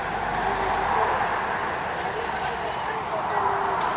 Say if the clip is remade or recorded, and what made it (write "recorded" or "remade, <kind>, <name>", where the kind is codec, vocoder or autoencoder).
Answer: recorded